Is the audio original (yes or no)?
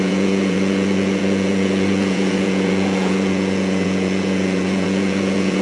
no